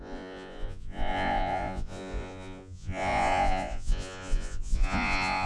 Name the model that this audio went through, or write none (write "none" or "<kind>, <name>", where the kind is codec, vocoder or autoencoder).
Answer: vocoder, Vocos